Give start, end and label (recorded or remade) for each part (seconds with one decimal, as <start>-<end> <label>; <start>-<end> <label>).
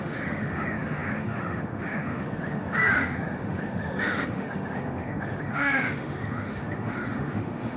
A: 0.0-7.8 remade